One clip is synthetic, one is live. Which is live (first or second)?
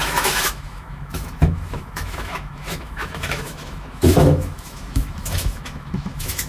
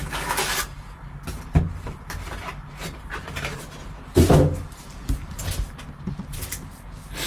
second